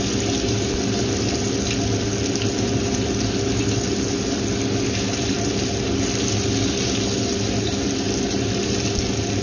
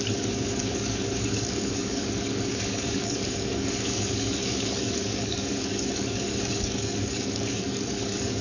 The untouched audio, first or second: first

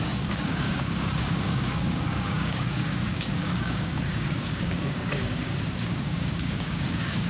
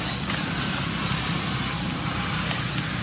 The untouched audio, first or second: second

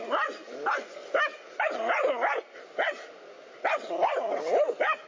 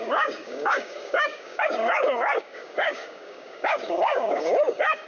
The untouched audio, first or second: first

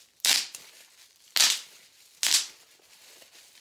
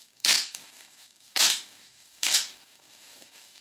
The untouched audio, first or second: first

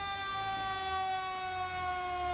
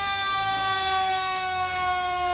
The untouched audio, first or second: first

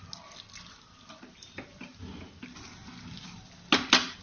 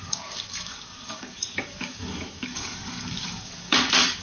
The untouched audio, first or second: first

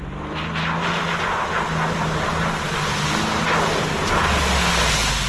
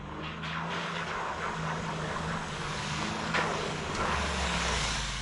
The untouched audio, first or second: first